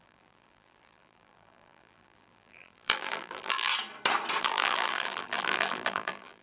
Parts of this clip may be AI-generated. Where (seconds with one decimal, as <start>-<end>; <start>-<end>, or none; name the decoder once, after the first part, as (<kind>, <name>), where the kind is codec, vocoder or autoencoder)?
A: 0.0-3.7 (vocoder, BigVGAN v2); 4.4-6.4